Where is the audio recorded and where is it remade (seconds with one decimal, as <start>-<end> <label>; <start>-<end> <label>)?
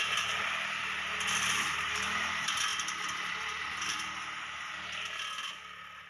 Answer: 0.0-6.1 recorded